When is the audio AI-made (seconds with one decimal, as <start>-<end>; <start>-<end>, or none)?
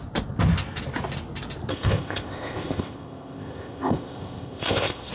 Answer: 1.7-5.1